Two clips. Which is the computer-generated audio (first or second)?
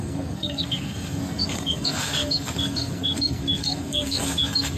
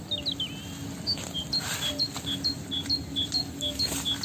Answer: first